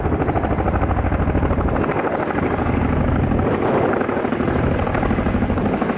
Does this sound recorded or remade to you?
recorded